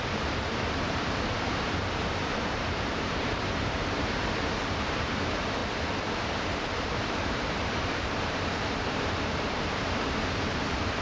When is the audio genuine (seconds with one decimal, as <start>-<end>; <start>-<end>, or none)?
5.6-6.2